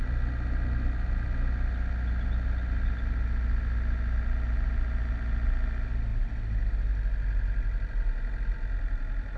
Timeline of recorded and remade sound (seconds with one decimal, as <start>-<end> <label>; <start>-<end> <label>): 0.0-9.4 recorded